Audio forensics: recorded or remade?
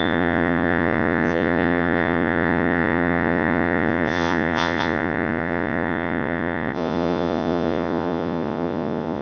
remade